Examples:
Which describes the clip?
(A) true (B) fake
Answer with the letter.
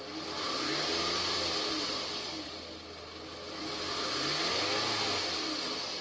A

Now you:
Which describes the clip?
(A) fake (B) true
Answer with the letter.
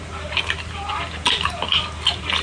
A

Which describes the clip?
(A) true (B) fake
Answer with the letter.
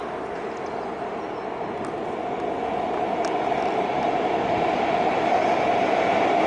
A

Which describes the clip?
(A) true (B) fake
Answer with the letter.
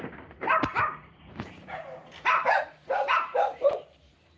B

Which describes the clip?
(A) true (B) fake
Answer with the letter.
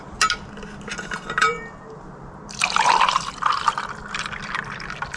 A